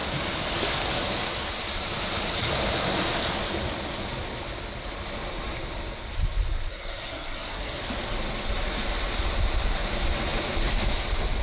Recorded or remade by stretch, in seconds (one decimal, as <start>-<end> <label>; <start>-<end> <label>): 0.0-6.7 recorded; 6.7-7.8 remade; 7.8-11.4 recorded